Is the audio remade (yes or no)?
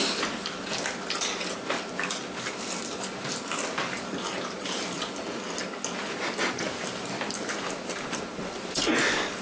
no